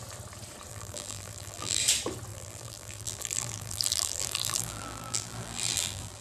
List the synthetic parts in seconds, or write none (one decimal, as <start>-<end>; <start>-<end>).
0.7-1.8; 2.3-6.2